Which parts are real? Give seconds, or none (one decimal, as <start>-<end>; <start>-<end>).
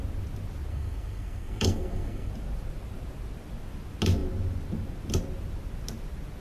0.0-0.7; 2.3-6.4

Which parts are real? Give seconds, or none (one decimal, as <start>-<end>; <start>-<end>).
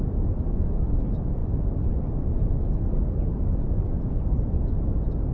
0.0-5.3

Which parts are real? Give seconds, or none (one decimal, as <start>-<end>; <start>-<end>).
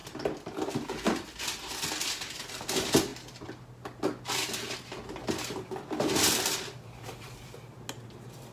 0.0-8.5